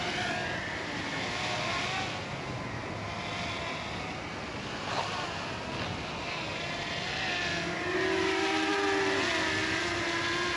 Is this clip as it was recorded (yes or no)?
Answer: yes